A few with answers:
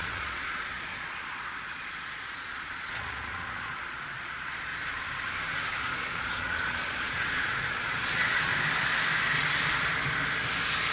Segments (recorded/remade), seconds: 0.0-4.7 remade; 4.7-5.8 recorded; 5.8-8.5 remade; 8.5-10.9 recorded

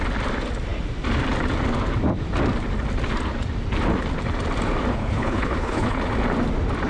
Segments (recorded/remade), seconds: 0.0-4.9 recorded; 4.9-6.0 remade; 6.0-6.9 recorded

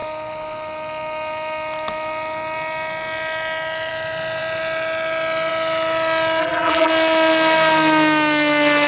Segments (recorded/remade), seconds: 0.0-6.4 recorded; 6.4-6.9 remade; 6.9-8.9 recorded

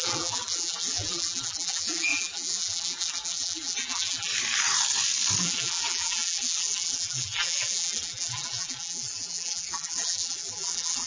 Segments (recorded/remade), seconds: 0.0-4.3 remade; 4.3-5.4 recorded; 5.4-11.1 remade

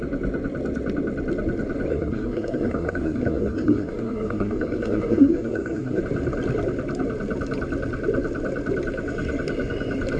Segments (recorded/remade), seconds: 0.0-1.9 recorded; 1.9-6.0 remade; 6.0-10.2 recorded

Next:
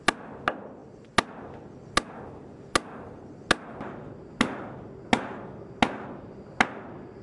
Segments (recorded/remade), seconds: 0.0-7.2 recorded

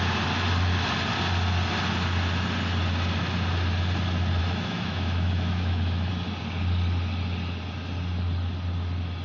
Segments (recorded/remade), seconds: 0.0-4.4 recorded; 4.4-6.1 remade; 6.1-9.2 recorded